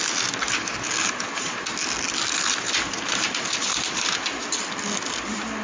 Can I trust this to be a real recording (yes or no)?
yes